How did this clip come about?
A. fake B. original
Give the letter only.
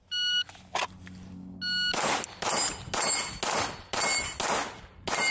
B